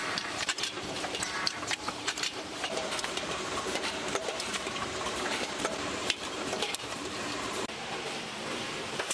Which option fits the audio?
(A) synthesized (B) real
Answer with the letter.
A